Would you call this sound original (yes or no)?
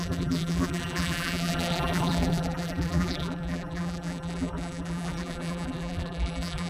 no